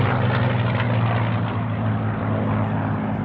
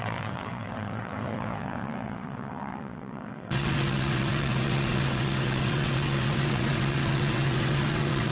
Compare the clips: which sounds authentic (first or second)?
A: first